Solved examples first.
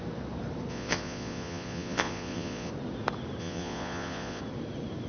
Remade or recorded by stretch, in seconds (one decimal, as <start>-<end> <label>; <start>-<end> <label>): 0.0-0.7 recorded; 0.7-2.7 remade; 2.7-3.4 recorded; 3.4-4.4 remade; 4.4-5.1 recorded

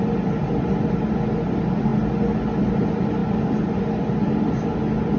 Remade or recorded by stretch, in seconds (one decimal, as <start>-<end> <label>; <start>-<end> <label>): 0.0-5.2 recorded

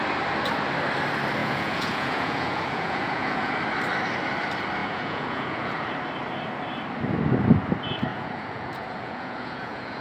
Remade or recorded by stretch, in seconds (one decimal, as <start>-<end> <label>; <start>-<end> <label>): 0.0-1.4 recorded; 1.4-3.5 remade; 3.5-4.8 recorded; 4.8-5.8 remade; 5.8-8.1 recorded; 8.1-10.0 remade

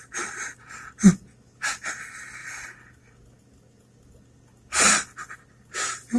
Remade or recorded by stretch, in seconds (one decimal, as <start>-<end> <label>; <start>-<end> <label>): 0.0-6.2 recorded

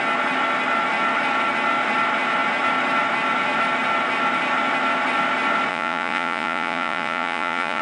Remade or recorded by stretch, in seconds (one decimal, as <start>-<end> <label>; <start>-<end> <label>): 0.0-5.7 recorded; 5.7-7.8 remade